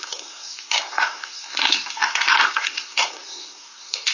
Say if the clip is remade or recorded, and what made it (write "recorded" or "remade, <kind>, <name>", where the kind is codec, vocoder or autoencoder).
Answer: remade, codec, SNAC